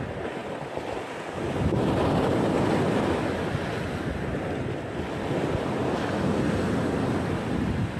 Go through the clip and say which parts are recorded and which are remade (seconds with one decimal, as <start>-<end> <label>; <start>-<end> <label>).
0.0-8.0 recorded

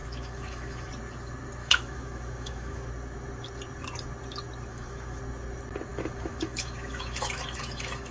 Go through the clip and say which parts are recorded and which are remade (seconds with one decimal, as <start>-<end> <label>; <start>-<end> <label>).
0.0-0.9 remade; 0.9-1.6 recorded; 1.6-2.9 remade; 2.9-4.7 recorded; 4.7-5.2 remade; 5.2-5.9 recorded; 5.9-8.1 remade